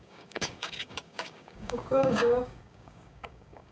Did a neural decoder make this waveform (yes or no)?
yes